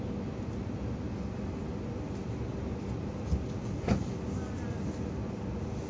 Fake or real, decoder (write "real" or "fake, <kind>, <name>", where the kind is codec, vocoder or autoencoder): real